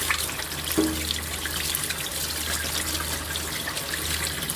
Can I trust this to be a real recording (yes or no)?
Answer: yes